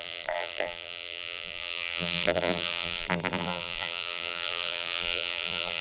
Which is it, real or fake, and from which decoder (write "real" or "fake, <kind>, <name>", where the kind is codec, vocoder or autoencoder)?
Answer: fake, vocoder, BigVGAN v2